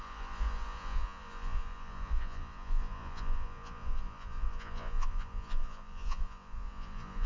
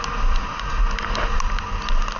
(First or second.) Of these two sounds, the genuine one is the second